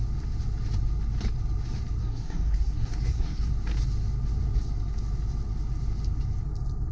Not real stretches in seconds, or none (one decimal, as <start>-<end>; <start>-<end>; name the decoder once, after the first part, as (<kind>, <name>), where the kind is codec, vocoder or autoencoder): 2.0-3.5 (codec, SNAC)